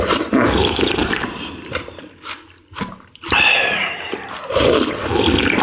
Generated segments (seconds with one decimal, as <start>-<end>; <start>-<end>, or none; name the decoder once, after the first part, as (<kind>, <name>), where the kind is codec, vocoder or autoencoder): 1.0-4.4 (vocoder, BigVGAN v2)